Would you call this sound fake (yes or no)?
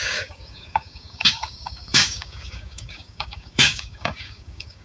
yes